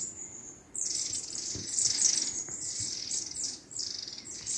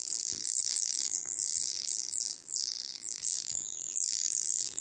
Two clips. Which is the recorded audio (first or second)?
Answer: first